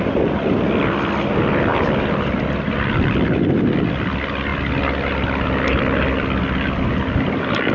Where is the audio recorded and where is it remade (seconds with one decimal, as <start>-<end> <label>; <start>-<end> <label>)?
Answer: 0.0-7.7 recorded